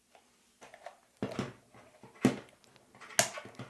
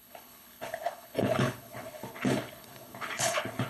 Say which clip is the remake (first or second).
second